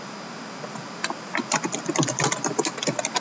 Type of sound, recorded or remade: recorded